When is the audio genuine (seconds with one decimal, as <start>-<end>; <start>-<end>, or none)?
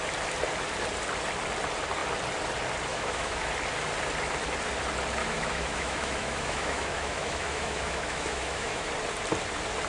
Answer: 0.0-2.9; 3.5-5.2; 8.9-9.9